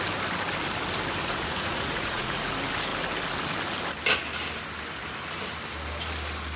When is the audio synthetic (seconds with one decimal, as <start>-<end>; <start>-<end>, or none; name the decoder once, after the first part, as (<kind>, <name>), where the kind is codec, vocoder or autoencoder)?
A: 1.2-2.5 (vocoder, Vocos)

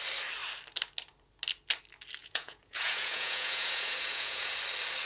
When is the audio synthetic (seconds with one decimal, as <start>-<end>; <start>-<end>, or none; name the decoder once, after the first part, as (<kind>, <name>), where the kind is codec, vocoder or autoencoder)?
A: 2.2-4.5 (vocoder, Vocos)

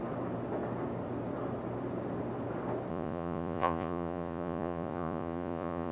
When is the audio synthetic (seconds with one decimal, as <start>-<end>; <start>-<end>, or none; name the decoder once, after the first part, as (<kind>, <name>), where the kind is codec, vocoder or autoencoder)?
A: 2.9-5.9 (vocoder, Vocos)

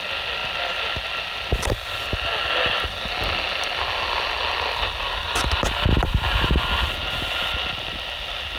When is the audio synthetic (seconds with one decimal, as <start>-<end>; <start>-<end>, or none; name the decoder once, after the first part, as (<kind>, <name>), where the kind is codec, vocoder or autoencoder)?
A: none